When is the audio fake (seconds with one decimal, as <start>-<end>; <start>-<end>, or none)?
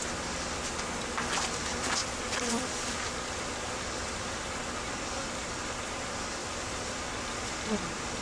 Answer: 2.0-5.4; 6.4-7.1